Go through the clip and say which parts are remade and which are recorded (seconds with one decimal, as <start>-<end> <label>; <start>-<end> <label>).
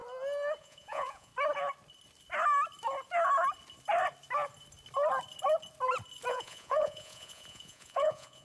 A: 0.0-0.6 recorded; 0.6-1.3 remade; 1.3-6.3 recorded; 6.3-8.4 remade